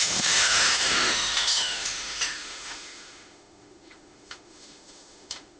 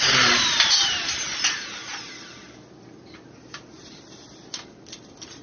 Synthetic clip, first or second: first